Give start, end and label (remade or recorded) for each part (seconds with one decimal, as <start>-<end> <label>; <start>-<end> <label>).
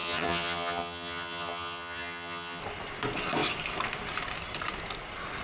0.0-2.6 remade; 2.6-5.4 recorded